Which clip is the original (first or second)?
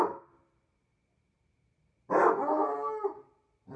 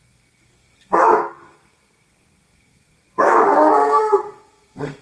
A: first